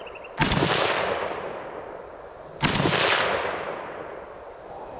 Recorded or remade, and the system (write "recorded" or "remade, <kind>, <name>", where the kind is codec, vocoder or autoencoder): recorded